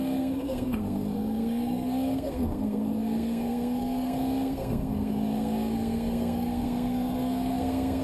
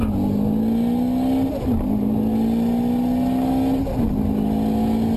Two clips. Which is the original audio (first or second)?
second